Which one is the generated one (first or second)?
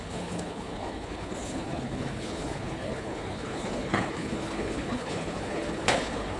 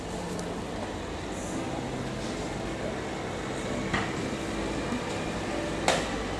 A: first